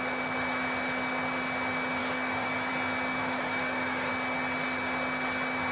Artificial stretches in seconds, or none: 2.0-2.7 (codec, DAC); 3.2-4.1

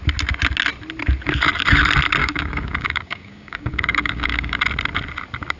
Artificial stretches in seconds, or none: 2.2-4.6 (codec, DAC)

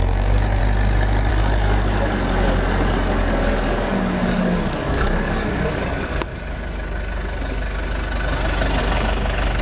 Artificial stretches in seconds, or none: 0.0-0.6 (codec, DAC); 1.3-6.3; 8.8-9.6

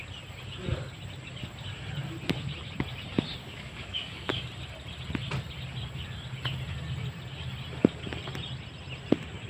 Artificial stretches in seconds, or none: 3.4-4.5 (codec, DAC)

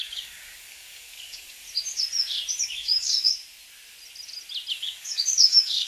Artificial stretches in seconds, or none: 0.0-1.6 (codec, DAC); 2.6-3.3; 4.7-5.9

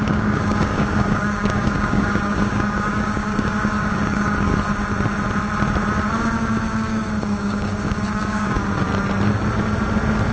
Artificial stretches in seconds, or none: 0.0-4.5 (codec, DAC); 6.2-8.9